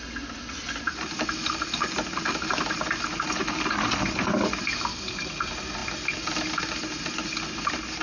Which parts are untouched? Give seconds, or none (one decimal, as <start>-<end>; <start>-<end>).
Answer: 0.0-8.0